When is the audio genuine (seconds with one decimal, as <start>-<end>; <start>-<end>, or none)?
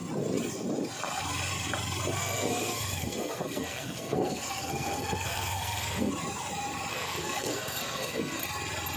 0.0-2.2; 6.1-6.9; 8.4-9.0